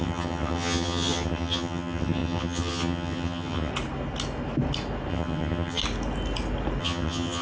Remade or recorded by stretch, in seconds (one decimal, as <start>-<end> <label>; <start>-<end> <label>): 0.0-3.7 remade; 3.7-5.1 recorded; 5.1-5.8 remade; 5.8-6.8 recorded; 6.8-7.4 remade